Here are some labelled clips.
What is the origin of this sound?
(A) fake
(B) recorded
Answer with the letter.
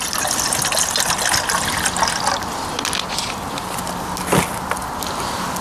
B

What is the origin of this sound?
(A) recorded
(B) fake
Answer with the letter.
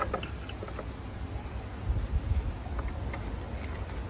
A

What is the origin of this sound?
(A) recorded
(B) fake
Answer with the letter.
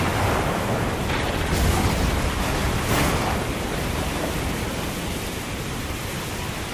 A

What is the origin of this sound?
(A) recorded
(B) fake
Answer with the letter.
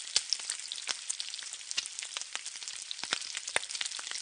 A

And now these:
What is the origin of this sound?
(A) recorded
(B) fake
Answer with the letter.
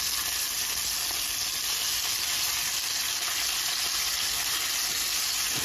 A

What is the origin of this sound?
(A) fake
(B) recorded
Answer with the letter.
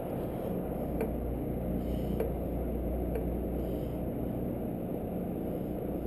B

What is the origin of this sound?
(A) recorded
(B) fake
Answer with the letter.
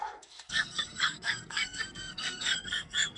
B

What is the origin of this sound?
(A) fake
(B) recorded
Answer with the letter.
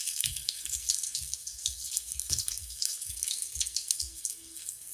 A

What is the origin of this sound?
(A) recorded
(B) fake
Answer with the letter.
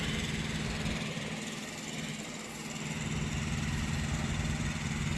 A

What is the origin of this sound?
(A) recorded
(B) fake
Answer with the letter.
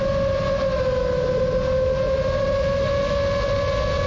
A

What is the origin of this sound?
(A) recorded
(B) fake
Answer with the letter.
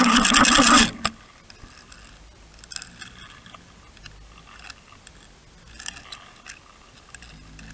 A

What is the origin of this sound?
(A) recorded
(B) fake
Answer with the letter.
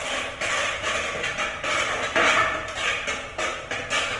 A